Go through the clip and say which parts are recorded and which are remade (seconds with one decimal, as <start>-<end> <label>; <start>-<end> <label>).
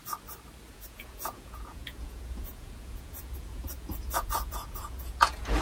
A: 0.0-0.7 recorded; 0.7-5.6 remade